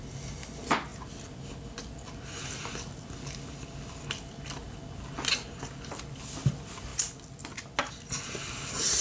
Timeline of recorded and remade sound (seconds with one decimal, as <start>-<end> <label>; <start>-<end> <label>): 0.0-9.0 recorded